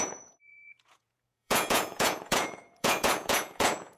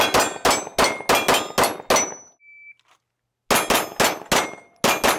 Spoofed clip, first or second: first